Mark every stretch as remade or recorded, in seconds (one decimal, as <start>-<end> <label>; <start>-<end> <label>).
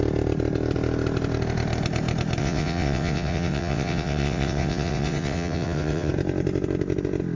0.0-2.4 recorded; 2.4-6.1 remade; 6.1-7.3 recorded